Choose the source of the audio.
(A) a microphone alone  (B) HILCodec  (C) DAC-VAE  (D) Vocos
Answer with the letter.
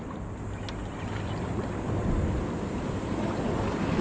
A